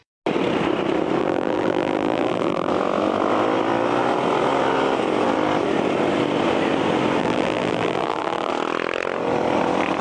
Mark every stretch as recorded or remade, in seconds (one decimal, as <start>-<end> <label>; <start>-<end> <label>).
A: 0.0-1.2 recorded; 1.2-2.7 remade; 2.7-7.2 recorded; 7.2-8.5 remade; 8.5-10.0 recorded